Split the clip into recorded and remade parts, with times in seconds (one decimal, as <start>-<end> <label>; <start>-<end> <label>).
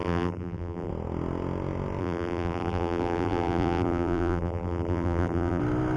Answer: 0.0-0.9 remade; 0.9-2.0 recorded; 2.0-5.6 remade; 5.6-6.0 recorded